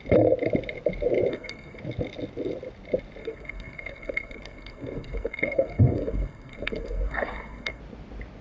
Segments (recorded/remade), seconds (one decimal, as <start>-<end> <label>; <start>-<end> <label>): 0.0-1.3 recorded; 1.3-1.8 remade; 1.8-3.2 recorded; 3.2-7.8 remade; 7.8-8.4 recorded